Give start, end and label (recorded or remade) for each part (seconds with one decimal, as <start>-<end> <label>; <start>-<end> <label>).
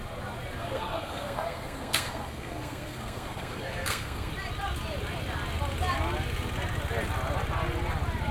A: 0.0-0.6 recorded; 0.6-4.3 remade; 4.3-8.3 recorded